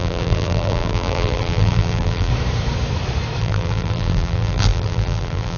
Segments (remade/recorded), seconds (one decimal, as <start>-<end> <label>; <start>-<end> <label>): 0.0-2.3 remade; 2.3-3.4 recorded; 3.4-5.6 remade